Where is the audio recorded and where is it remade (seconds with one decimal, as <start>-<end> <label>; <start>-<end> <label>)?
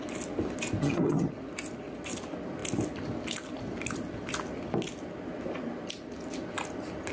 0.0-0.8 recorded; 0.8-1.3 remade; 1.3-7.1 recorded